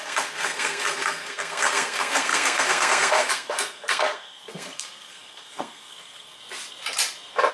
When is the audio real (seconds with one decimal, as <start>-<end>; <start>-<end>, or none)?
6.4-7.5